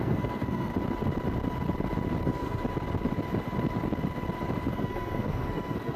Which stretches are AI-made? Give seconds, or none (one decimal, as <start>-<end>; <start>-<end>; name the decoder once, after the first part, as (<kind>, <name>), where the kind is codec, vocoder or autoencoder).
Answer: 0.0-0.7 (codec, SNAC); 2.2-2.6; 4.7-6.0